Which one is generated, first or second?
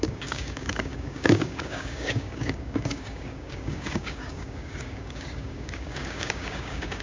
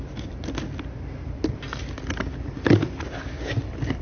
first